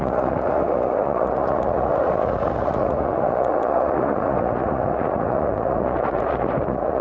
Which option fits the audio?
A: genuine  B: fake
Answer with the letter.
B